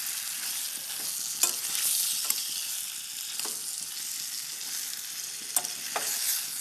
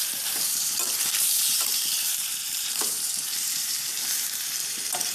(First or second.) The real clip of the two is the first